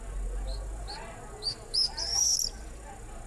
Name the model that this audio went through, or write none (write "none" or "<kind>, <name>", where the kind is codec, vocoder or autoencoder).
none